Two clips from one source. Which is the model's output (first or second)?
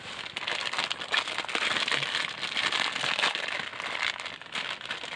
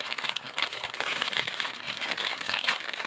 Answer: second